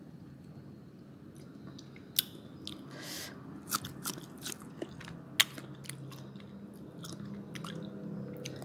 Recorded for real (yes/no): yes